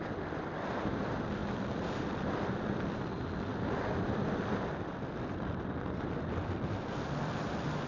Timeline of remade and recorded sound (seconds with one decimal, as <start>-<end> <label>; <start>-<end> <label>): 0.0-7.9 remade